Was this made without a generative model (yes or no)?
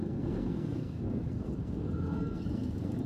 no